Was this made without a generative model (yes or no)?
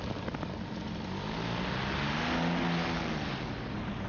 yes